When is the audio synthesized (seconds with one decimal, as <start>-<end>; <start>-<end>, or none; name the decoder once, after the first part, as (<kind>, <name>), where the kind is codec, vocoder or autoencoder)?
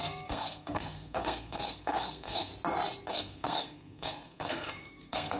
0.0-2.5 (codec, SNAC); 3.1-5.4